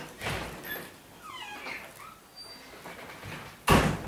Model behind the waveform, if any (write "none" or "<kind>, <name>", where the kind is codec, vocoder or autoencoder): none